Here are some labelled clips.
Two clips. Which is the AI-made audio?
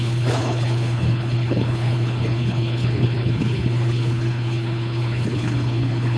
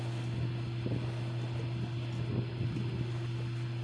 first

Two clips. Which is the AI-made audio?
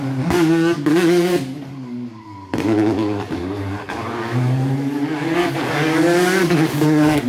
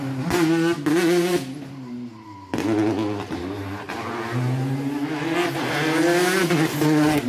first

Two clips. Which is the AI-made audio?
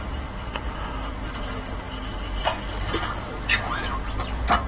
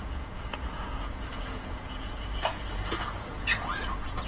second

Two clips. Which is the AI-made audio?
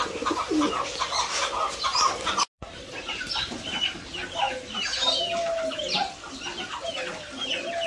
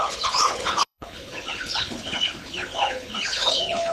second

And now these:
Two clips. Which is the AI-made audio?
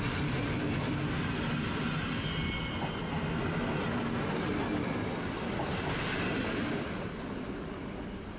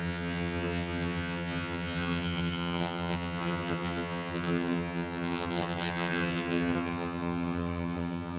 second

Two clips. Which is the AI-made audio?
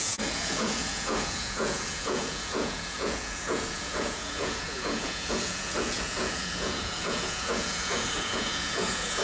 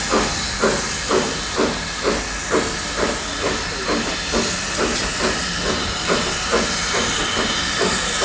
first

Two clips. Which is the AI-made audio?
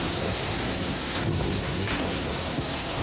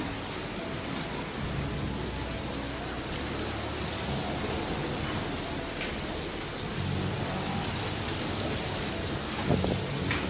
first